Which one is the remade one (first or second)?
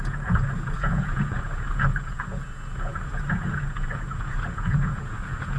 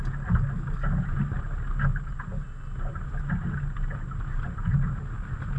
first